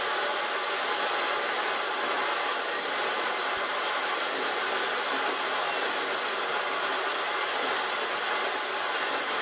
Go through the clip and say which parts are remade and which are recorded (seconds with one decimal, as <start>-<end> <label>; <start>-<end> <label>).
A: 0.0-2.5 recorded; 2.5-3.0 remade; 3.0-4.0 recorded; 4.0-4.6 remade; 4.6-9.4 recorded